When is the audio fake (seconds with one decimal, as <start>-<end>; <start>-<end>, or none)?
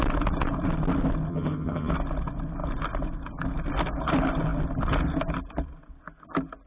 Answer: 1.3-1.9